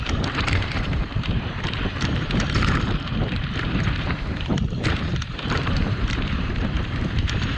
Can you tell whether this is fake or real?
fake